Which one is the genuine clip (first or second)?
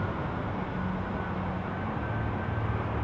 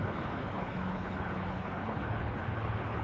first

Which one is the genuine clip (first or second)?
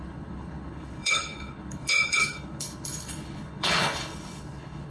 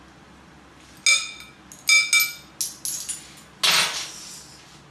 second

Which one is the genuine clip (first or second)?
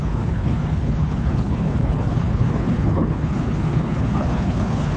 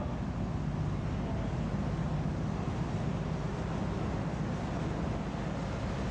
second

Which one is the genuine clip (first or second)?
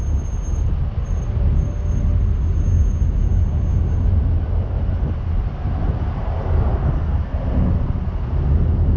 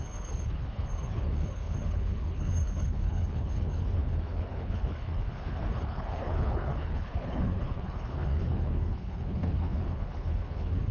first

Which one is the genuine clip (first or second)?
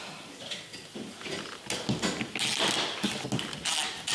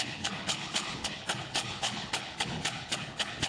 first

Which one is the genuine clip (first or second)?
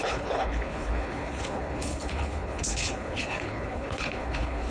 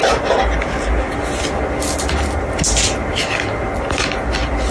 second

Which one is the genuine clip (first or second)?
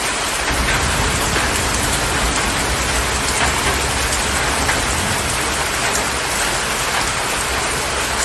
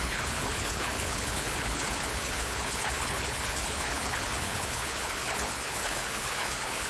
first